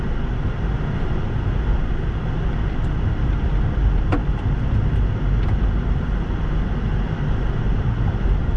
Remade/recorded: recorded